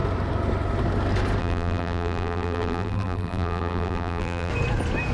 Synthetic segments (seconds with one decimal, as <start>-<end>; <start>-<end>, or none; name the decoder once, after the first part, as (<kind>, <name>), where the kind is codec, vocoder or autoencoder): 1.4-4.5 (vocoder, BigVGAN v2)